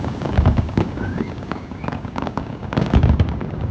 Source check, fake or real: fake